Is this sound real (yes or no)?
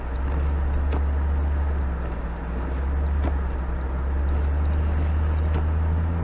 yes